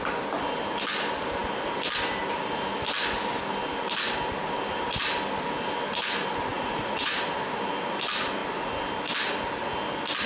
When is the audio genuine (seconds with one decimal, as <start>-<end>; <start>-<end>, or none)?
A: 0.0-6.5; 7.1-10.3